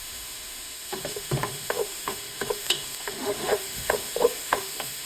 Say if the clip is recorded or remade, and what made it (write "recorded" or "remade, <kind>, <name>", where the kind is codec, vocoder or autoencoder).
remade, autoencoder, DAC-VAE